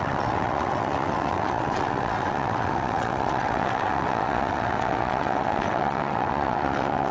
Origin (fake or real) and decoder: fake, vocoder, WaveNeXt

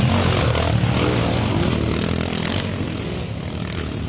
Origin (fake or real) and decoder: real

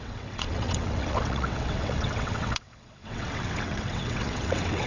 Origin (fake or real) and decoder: fake, vocoder, WaveNeXt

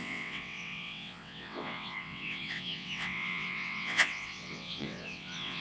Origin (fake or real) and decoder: fake, vocoder, WaveNeXt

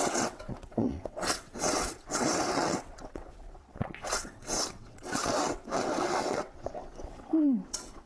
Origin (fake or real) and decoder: fake, vocoder, WaveNeXt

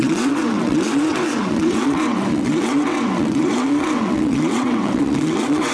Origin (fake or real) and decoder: fake, vocoder, WaveNeXt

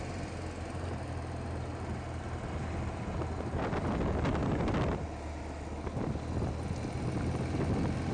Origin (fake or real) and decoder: real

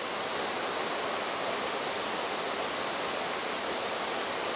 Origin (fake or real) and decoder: real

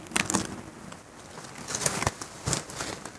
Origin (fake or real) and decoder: real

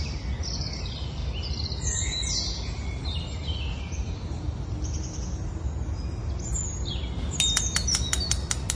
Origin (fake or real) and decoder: real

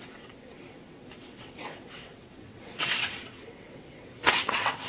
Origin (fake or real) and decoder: fake, vocoder, WaveNeXt